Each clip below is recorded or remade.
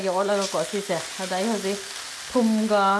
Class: recorded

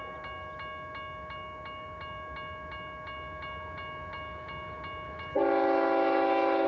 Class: recorded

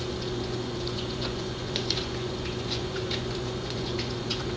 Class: remade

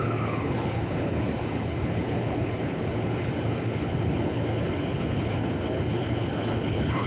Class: remade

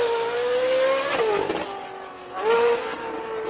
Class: recorded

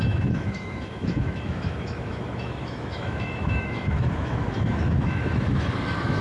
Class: remade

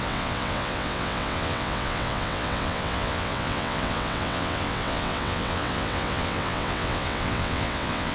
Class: remade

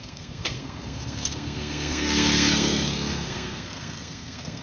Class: remade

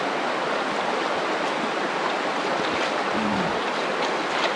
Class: recorded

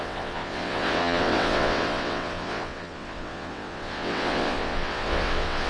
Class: remade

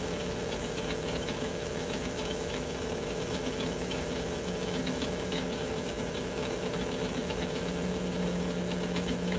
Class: remade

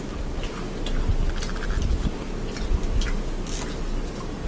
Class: recorded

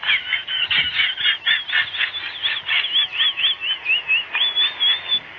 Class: recorded